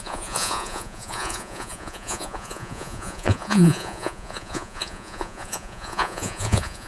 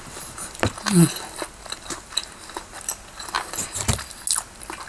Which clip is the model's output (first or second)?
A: first